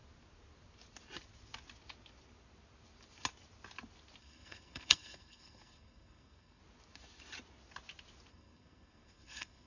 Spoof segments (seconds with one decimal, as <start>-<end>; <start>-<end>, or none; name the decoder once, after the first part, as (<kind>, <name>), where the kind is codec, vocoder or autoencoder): 4.2-6.6 (codec, SNAC); 8.3-9.7